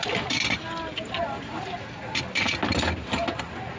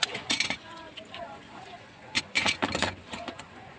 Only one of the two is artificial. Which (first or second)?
second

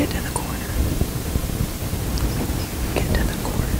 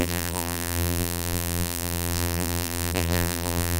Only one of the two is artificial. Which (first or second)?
second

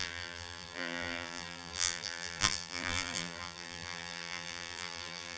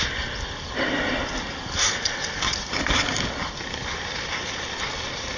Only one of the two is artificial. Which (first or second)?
first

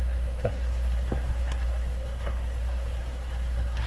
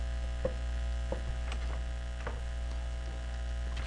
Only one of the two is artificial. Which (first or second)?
first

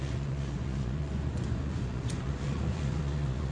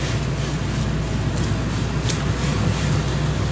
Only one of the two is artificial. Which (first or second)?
first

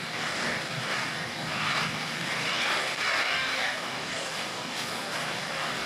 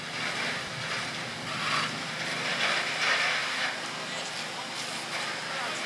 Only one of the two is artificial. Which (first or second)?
first